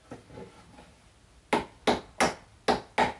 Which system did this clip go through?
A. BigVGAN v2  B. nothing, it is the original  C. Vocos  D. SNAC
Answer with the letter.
B